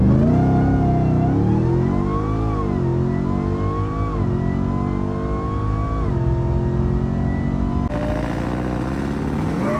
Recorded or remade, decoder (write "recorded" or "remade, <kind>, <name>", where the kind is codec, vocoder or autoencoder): recorded